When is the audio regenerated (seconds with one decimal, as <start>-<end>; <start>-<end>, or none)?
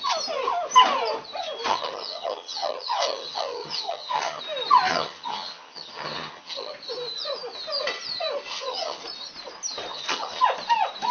1.7-4.4; 4.9-6.7; 8.5-9.0; 9.9-10.4